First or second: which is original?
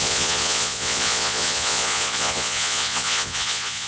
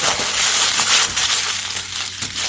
second